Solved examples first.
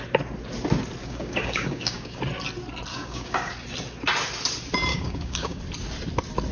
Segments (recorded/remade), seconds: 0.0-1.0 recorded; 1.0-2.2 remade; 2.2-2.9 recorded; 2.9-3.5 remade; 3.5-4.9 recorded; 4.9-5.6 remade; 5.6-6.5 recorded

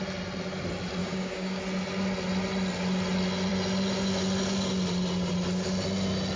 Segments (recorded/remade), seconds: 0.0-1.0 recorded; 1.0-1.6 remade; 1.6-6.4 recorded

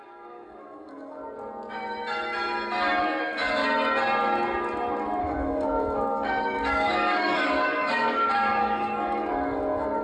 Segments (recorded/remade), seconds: 0.0-1.2 remade; 1.2-3.0 recorded; 3.0-3.6 remade; 3.6-5.2 recorded; 5.2-10.0 remade

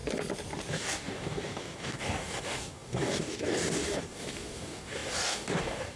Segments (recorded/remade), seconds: 0.0-0.7 recorded; 0.7-6.0 remade

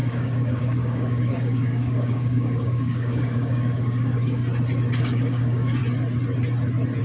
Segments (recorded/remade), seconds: 0.0-4.4 remade; 4.4-5.0 recorded; 5.0-5.8 remade; 5.8-7.0 recorded

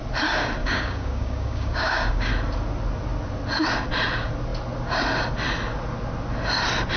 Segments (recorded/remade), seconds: 0.0-0.6 recorded; 0.6-2.3 remade; 2.3-7.0 recorded